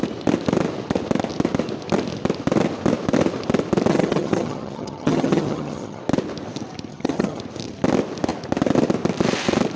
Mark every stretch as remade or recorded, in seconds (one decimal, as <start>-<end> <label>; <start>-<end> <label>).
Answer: 0.0-3.9 recorded; 3.9-6.0 remade; 6.0-6.9 recorded; 6.9-7.4 remade; 7.4-9.8 recorded